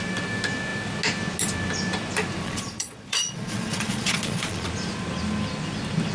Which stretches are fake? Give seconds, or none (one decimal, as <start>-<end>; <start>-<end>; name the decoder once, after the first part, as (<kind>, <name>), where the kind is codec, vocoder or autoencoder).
2.4-4.7 (vocoder, Vocos)

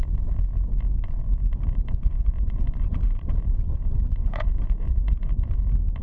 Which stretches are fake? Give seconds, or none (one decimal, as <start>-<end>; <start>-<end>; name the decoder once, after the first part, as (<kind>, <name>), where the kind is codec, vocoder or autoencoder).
2.0-5.3 (vocoder, Vocos)

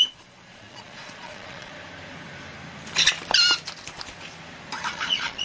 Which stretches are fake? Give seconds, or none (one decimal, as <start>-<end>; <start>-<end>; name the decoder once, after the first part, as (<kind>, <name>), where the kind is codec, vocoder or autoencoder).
0.0-1.7 (vocoder, Vocos); 4.9-5.4